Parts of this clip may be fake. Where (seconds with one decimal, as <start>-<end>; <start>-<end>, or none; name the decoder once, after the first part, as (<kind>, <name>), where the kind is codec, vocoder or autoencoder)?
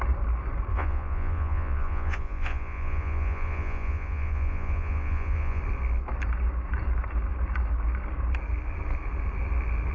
0.7-5.6 (vocoder, Vocos)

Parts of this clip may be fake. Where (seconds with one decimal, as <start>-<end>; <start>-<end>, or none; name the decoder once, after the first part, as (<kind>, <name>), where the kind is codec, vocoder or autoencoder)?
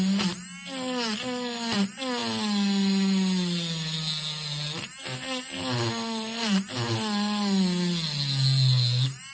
none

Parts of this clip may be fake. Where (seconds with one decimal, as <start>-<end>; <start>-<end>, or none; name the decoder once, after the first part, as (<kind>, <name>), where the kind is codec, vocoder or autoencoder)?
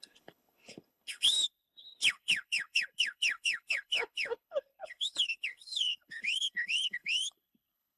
0.0-8.0 (codec, HILCodec)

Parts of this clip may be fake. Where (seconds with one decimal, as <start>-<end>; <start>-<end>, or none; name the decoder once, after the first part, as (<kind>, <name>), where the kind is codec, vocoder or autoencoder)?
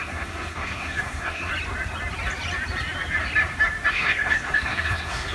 0.0-1.5 (codec, SNAC); 3.9-5.3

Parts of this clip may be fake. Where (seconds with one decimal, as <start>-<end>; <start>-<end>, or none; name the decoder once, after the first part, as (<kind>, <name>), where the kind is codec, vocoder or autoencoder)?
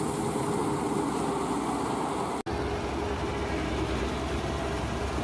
none